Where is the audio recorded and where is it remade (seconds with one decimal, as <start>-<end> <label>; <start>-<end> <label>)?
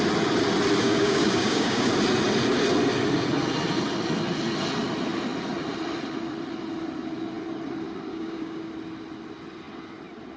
0.0-0.8 recorded; 0.8-1.9 remade; 1.9-8.1 recorded; 8.1-8.7 remade; 8.7-10.4 recorded